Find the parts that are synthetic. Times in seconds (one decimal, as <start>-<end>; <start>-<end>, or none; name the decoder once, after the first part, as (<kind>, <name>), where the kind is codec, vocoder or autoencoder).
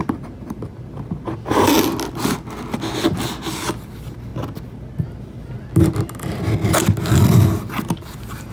none